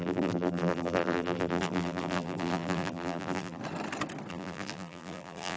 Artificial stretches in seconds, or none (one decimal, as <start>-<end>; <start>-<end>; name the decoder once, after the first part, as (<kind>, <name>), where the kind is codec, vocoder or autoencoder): 0.0-3.6 (vocoder, BigVGAN v2); 4.3-5.6